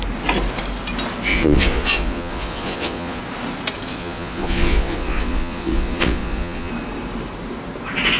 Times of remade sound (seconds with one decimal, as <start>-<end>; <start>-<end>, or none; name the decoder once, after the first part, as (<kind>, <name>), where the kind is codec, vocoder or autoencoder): 1.3-3.2 (vocoder, Vocos); 3.9-6.7